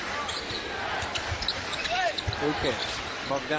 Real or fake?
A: real